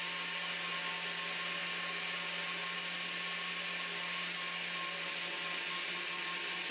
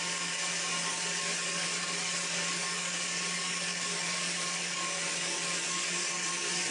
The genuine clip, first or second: first